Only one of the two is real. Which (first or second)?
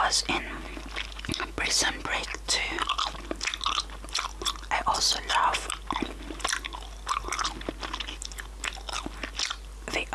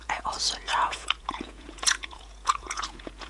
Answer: first